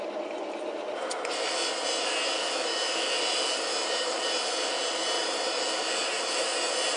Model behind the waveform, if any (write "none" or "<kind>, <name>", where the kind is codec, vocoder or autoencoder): none